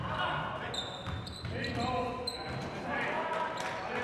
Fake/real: real